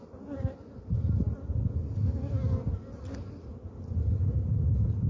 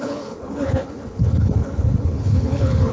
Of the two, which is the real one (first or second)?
first